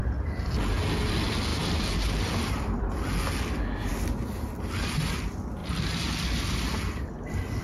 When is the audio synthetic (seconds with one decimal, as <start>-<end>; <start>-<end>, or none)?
0.0-0.6; 1.5-2.9; 5.6-7.6